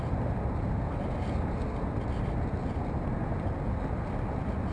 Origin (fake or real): real